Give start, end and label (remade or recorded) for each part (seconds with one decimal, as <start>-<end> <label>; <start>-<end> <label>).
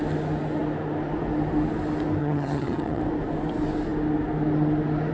0.0-2.2 recorded; 2.2-3.0 remade; 3.0-5.1 recorded